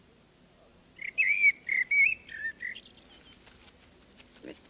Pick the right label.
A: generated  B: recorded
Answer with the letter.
B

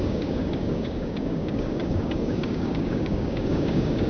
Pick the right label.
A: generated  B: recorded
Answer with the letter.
A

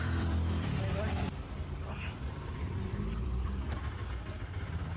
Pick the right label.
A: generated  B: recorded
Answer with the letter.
A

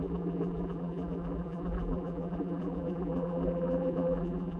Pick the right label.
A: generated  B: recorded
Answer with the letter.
A